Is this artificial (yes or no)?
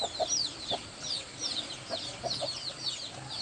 no